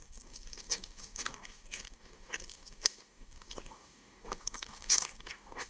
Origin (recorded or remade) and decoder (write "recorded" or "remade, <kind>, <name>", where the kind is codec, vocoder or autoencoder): remade, codec, DAC